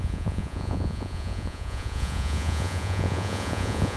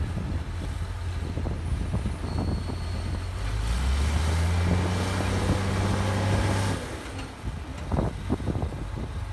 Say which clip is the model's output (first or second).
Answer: first